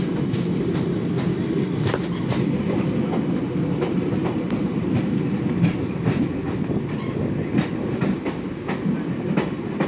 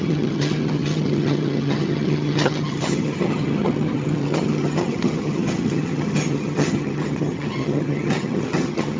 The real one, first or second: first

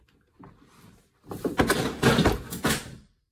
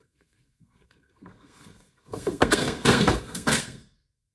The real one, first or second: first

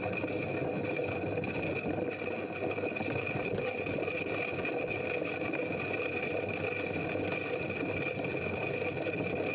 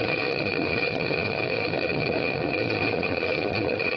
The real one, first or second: first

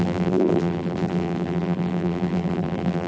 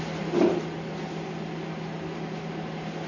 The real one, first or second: second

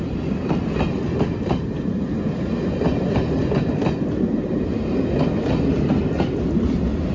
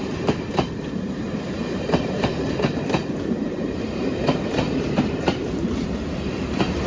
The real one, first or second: first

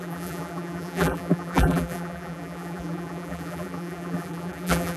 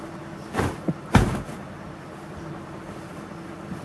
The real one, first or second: second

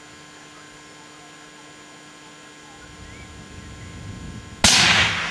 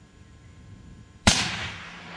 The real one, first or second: first